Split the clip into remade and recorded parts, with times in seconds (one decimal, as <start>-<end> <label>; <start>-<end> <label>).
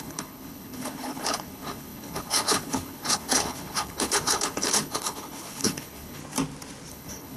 0.0-6.2 remade; 6.2-6.9 recorded; 6.9-7.4 remade